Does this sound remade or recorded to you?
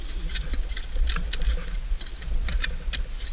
recorded